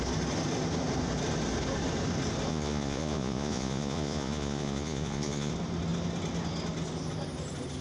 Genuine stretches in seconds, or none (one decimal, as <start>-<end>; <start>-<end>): 0.0-2.5; 5.5-7.8